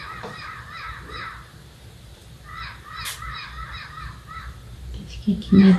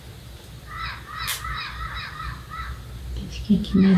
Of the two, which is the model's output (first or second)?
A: first